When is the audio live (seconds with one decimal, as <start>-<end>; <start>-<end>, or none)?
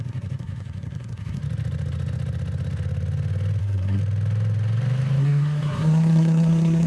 1.4-3.6; 4.0-5.2